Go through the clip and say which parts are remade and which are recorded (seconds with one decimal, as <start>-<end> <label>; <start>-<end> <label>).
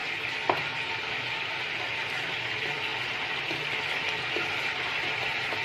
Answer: 0.0-5.6 recorded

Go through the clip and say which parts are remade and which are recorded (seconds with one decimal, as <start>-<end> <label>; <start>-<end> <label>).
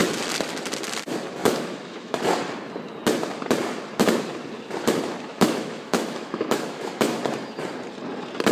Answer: 0.0-1.4 recorded; 1.4-2.2 remade; 2.2-5.3 recorded; 5.3-7.2 remade; 7.2-8.5 recorded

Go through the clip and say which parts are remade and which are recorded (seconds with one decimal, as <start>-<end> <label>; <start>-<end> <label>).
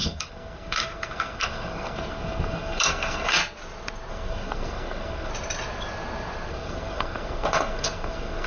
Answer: 0.0-3.4 remade; 3.4-4.1 recorded; 4.1-5.3 remade; 5.3-6.5 recorded; 6.5-8.5 remade